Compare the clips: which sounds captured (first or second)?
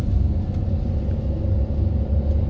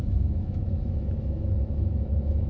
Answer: first